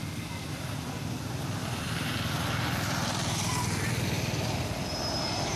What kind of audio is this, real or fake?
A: real